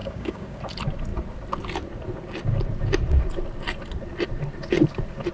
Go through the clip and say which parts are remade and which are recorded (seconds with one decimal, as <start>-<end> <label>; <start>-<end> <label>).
0.0-0.6 remade; 0.6-5.3 recorded